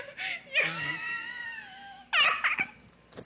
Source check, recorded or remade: recorded